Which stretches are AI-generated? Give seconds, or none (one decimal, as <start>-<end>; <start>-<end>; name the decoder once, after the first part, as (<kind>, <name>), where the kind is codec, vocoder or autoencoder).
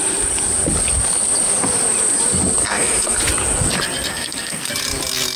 2.6-3.2 (codec, SNAC); 4.1-4.7